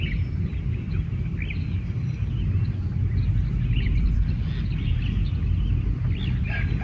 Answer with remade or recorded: recorded